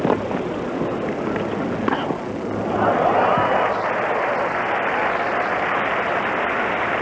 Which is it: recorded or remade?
recorded